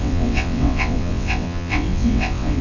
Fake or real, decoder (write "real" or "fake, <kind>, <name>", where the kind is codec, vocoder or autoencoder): fake, vocoder, WaveNeXt